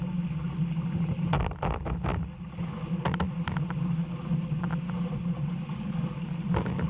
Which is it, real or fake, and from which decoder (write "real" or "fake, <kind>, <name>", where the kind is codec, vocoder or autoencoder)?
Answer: real